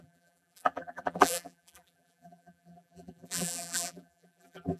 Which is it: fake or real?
fake